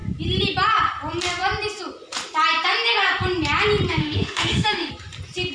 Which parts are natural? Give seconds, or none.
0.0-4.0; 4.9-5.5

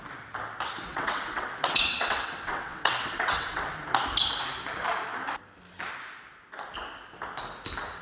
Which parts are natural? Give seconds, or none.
0.0-0.9; 3.7-8.0

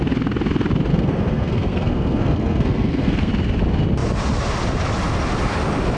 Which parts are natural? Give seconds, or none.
0.0-0.9; 3.3-6.0

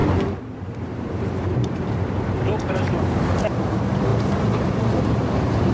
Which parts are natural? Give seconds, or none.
0.0-0.8; 4.1-5.0

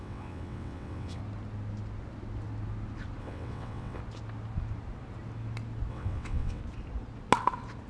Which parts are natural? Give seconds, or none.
1.2-3.2; 4.0-5.9; 6.6-7.9